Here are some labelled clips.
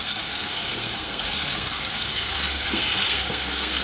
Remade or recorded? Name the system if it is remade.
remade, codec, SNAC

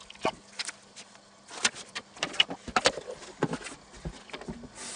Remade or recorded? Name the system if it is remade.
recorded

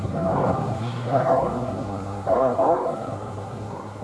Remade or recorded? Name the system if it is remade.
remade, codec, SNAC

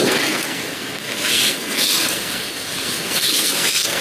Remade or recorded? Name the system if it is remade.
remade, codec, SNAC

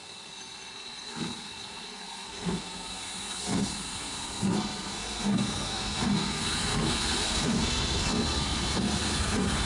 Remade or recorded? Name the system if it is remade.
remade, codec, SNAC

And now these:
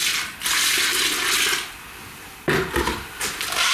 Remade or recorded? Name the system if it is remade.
recorded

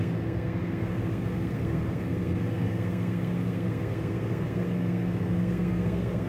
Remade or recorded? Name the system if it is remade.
remade, codec, SNAC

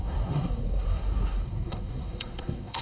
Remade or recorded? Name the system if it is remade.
remade, codec, SNAC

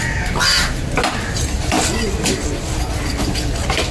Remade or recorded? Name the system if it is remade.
recorded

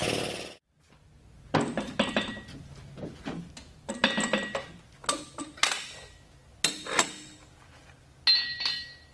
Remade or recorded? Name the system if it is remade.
recorded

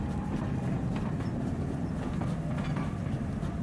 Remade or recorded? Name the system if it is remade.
recorded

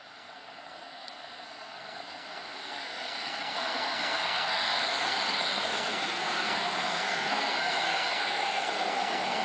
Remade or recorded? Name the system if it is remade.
remade, codec, SNAC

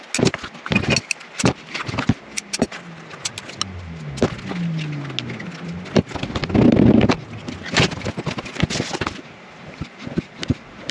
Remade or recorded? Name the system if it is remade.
recorded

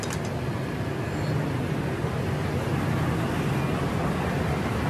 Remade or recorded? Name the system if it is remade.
recorded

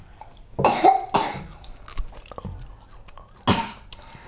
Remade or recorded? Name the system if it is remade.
recorded